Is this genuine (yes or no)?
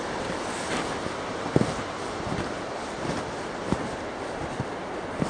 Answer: yes